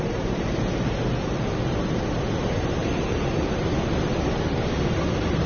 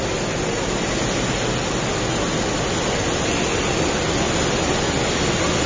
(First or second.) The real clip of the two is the second